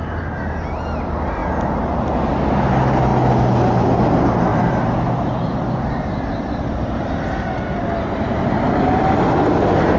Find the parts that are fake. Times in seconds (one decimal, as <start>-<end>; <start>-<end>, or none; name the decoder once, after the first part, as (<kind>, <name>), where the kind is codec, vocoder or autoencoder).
none